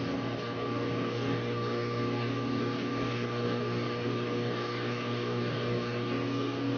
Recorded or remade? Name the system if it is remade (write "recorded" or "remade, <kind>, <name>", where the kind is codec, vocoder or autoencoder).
remade, codec, DAC